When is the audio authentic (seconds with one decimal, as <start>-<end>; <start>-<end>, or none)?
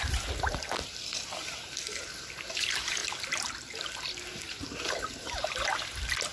0.0-6.3